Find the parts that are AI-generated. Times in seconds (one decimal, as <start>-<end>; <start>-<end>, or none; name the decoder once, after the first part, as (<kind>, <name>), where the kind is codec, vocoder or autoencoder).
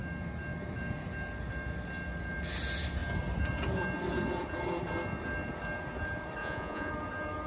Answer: 6.4-6.9 (vocoder, Vocos)